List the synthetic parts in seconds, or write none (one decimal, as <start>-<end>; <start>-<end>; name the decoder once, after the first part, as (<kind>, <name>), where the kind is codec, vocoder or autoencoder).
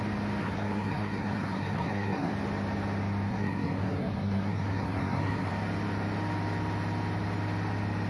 0.4-2.3 (codec, SNAC); 3.3-5.5